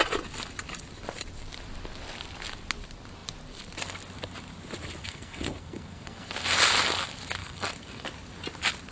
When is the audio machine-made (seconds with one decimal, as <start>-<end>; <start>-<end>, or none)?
5.0-6.3; 7.4-8.1